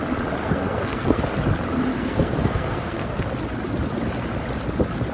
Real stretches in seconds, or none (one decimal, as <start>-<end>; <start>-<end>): 0.0-0.4; 1.2-1.9; 3.2-5.1